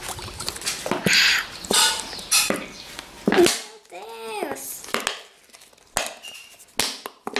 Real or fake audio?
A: real